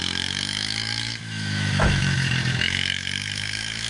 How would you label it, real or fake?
fake